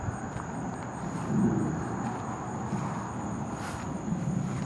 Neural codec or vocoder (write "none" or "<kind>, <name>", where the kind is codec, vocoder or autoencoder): none